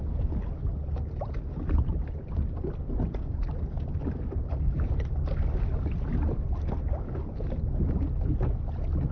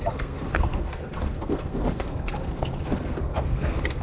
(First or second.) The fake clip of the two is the second